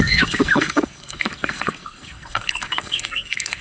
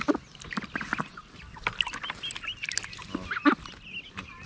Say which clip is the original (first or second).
second